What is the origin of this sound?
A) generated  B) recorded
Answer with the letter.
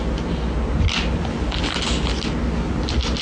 B